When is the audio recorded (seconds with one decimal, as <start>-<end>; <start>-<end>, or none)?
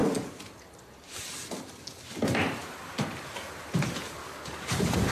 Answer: 0.0-4.2